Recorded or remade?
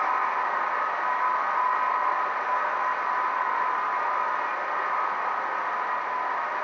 recorded